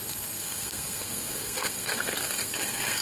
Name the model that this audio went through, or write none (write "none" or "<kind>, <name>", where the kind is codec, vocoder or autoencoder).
codec, SNAC